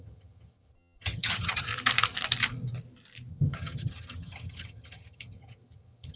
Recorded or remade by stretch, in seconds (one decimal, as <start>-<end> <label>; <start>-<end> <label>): 0.0-1.7 remade; 1.7-3.3 recorded; 3.3-6.2 remade